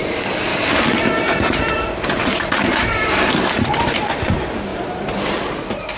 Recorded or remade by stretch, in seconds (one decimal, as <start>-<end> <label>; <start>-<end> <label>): 0.0-0.5 recorded; 0.5-4.1 remade; 4.1-4.7 recorded; 4.7-5.4 remade; 5.4-6.0 recorded